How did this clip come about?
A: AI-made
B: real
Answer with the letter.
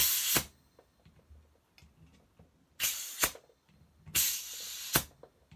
B